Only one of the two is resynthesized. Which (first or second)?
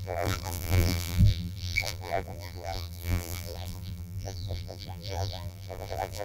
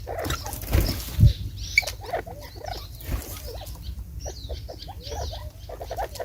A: first